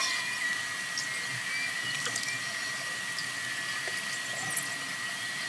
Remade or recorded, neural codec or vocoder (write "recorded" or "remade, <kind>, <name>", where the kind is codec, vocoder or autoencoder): recorded